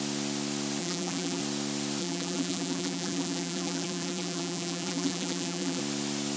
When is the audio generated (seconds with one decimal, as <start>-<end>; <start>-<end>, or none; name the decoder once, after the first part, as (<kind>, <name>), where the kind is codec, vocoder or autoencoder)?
0.8-1.4 (vocoder, BigVGAN v2); 2.0-5.8